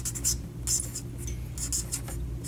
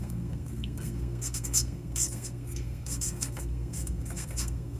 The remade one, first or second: second